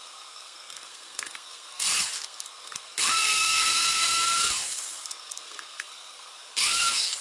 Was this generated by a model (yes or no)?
yes